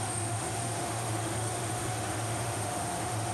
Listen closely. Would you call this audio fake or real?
fake